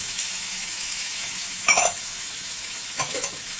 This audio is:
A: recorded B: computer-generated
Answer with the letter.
B